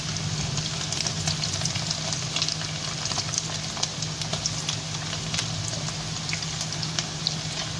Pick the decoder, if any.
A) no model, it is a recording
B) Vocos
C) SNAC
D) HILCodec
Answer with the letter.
A